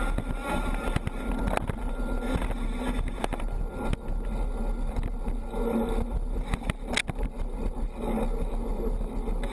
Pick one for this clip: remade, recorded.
recorded